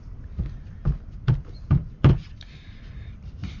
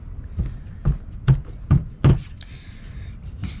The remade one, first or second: first